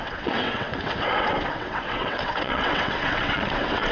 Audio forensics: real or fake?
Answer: fake